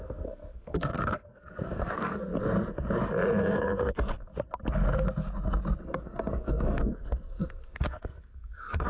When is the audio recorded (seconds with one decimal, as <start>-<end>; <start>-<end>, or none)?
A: 2.3-3.4; 4.3-5.8